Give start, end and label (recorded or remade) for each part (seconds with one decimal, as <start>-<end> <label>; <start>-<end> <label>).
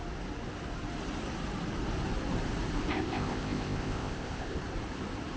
0.0-2.9 recorded; 2.9-4.6 remade; 4.6-5.4 recorded